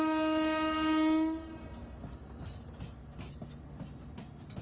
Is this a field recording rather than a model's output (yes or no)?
yes